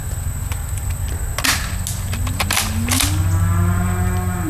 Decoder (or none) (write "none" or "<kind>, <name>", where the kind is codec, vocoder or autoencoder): none